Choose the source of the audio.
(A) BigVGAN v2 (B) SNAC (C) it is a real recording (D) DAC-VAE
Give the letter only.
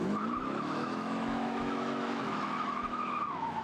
D